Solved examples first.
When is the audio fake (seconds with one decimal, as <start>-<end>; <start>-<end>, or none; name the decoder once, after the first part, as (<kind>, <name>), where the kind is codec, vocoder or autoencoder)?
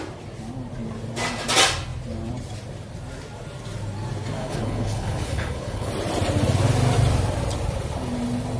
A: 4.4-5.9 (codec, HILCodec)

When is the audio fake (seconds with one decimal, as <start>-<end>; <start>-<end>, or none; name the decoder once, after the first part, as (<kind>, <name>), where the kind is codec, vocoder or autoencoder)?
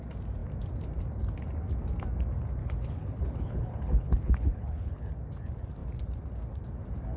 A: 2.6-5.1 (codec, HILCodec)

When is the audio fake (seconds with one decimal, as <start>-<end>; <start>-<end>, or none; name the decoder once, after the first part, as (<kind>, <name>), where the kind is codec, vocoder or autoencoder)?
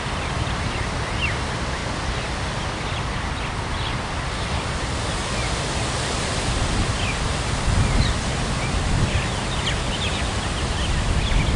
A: none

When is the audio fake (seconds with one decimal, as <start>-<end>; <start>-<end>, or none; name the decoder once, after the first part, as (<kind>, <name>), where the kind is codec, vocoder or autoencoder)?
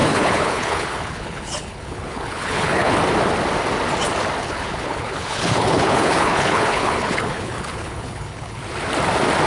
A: 0.0-2.9 (codec, HILCodec); 4.4-8.6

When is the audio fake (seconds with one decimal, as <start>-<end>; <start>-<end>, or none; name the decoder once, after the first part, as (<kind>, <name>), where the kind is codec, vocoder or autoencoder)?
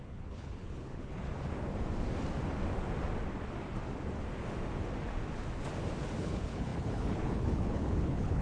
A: 0.0-1.2 (codec, HILCodec); 6.2-8.4